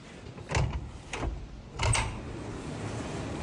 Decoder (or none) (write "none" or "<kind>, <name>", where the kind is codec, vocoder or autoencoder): none